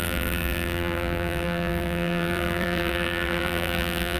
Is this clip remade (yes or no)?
yes